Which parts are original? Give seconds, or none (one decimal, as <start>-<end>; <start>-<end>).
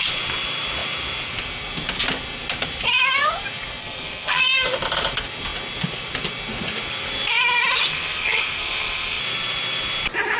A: 0.0-3.8; 4.4-7.9; 9.2-10.4